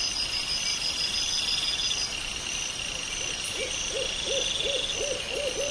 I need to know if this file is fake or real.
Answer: real